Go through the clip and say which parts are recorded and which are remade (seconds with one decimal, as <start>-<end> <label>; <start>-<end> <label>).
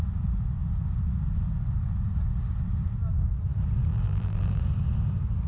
0.0-3.9 recorded; 3.9-4.6 remade; 4.6-5.5 recorded